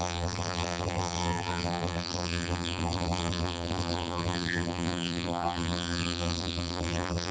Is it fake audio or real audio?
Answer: fake